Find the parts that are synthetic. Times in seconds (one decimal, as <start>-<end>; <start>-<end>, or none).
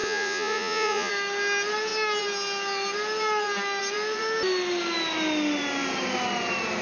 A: 0.0-1.1